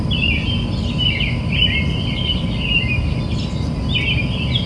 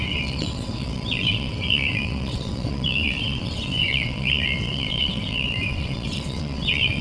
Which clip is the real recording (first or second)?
first